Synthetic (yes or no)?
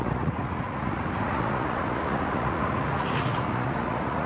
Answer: yes